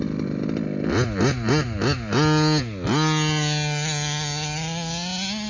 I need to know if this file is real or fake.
real